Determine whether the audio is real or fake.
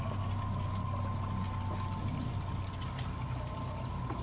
real